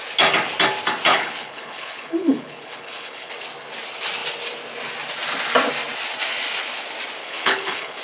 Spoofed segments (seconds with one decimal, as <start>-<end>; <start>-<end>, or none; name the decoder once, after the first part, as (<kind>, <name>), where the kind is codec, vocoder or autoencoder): 1.1-3.3 (codec, HILCodec); 7.2-8.0